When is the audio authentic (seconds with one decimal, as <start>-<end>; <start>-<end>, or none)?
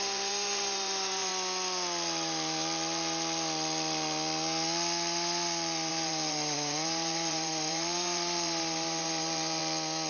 1.3-5.9; 9.6-10.1